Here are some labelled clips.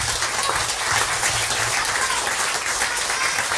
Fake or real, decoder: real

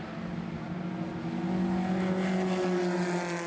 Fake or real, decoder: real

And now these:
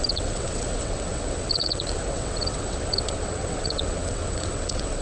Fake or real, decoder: fake, vocoder, WaveNeXt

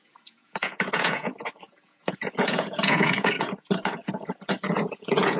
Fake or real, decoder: fake, vocoder, Vocos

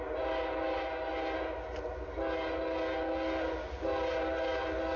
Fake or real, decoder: real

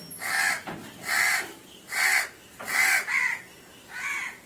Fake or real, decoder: real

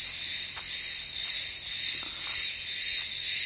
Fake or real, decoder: real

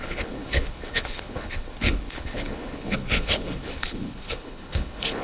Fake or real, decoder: fake, codec, HILCodec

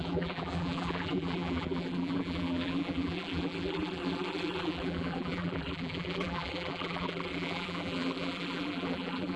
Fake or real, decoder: fake, vocoder, BigVGAN v2